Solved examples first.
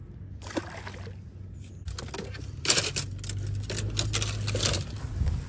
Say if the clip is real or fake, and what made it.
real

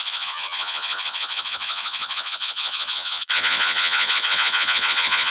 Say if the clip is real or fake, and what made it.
fake, vocoder, Vocos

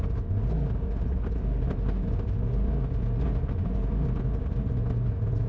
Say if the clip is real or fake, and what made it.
real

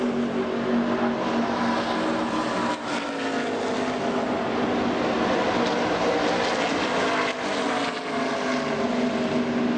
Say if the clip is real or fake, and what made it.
real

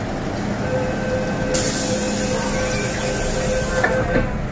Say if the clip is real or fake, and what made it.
real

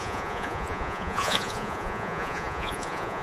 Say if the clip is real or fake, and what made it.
fake, vocoder, Vocos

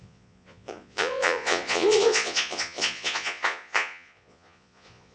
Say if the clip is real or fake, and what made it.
fake, vocoder, Vocos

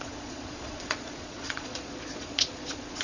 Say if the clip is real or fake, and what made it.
fake, vocoder, Vocos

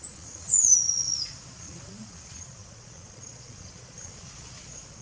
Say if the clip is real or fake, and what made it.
fake, vocoder, Vocos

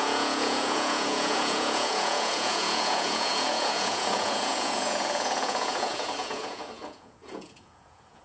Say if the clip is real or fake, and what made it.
fake, vocoder, Vocos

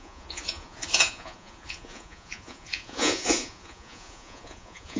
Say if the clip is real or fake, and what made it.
fake, vocoder, Vocos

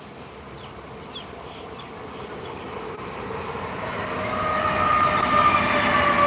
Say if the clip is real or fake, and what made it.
real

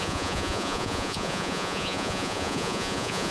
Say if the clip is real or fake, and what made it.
fake, vocoder, Vocos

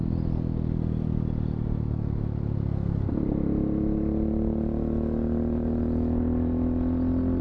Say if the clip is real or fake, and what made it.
real